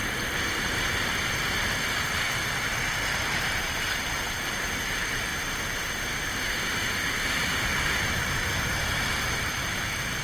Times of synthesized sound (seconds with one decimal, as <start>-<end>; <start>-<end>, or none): 0.5-3.6; 4.4-5.3; 8.8-10.2